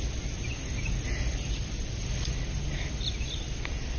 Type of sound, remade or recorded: recorded